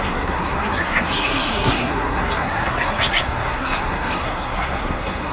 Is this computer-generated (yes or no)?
yes